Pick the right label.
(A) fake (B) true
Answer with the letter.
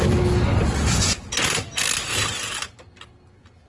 B